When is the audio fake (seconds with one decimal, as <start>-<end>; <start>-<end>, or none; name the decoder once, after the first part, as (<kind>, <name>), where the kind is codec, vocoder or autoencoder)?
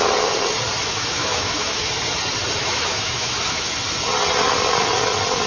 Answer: 0.8-1.9 (autoencoder, DAC-VAE); 2.6-3.7